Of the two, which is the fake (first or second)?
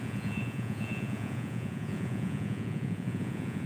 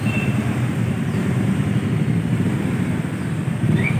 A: first